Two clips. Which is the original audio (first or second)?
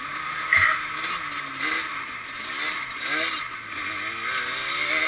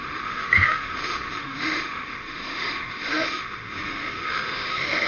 first